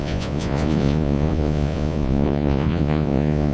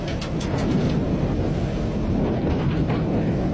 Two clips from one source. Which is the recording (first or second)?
second